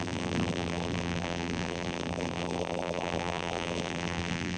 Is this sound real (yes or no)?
no